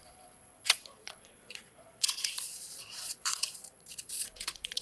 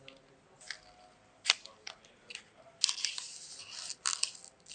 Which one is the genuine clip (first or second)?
second